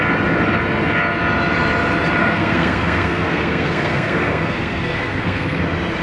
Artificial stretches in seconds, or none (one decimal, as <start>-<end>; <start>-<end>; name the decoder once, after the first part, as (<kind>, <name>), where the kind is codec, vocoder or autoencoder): 2.2-5.6 (codec, SNAC)